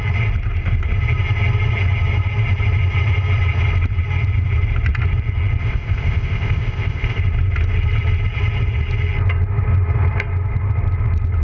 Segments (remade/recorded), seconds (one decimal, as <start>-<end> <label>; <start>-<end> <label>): 0.0-5.6 recorded; 5.6-7.2 remade; 7.2-11.4 recorded